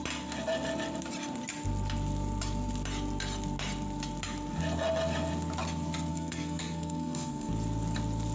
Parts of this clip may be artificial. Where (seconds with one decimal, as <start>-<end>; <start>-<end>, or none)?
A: 6.1-7.5